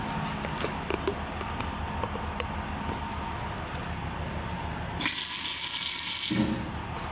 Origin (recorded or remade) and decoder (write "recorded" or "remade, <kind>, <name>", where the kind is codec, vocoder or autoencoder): recorded